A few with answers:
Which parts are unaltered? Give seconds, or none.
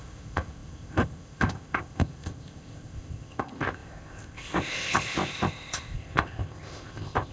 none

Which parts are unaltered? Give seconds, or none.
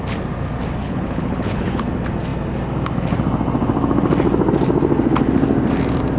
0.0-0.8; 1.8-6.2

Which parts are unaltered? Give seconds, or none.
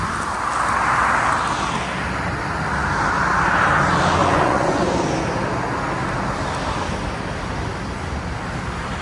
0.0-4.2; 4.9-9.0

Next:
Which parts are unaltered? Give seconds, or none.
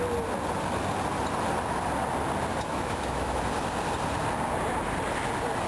0.0-2.5; 3.4-5.7